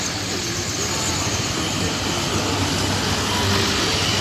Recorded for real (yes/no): yes